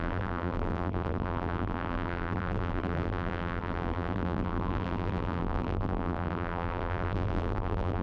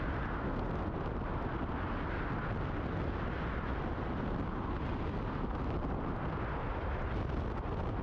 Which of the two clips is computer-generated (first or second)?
first